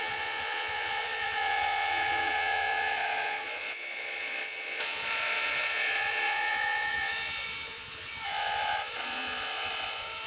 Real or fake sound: fake